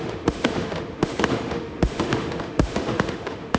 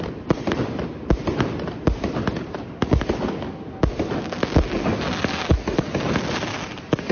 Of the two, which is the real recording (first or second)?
second